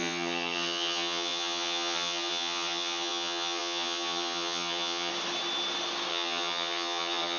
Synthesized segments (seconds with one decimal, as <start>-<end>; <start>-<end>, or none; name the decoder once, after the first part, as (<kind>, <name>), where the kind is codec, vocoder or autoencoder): 0.0-5.1 (vocoder, HiFi-GAN); 6.1-7.4